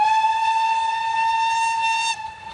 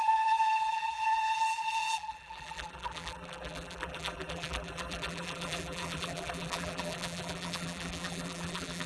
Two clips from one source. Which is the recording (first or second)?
first